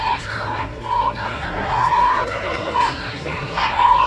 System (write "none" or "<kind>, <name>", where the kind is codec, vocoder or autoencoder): codec, SNAC